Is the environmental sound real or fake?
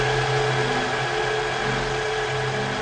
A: real